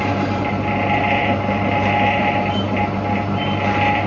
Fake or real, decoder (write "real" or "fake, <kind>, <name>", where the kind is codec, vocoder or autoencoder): real